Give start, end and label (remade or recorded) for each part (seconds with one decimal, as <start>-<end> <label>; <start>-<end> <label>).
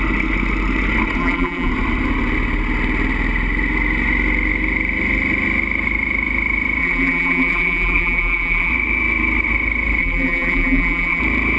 0.0-1.2 recorded; 1.2-1.7 remade; 1.7-6.8 recorded; 6.8-8.7 remade; 8.7-10.0 recorded; 10.0-11.2 remade; 11.2-11.6 recorded